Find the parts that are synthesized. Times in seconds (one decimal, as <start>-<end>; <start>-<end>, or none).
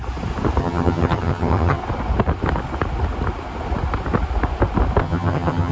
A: 0.6-1.8; 5.0-5.7